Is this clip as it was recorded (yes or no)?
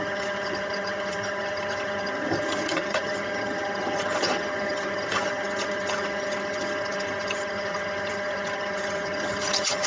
no